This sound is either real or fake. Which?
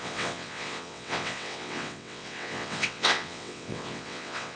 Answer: fake